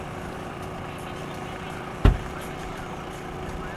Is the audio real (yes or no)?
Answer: no